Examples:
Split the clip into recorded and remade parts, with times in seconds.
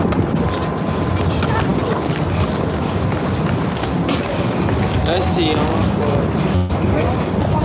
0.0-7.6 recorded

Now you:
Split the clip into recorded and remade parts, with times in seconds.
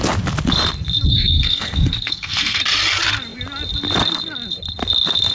0.0-1.1 recorded; 1.1-2.6 remade; 2.6-5.3 recorded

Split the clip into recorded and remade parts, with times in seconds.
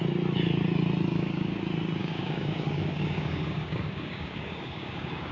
0.0-1.1 recorded; 1.1-1.6 remade; 1.6-2.0 recorded; 2.0-5.3 remade